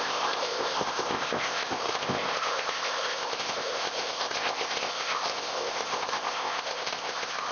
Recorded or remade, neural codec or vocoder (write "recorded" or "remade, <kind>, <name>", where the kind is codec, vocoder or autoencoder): remade, codec, ZipCodec